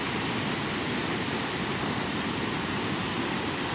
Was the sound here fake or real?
real